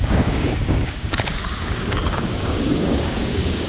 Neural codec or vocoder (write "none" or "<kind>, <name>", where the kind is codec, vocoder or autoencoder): codec, DAC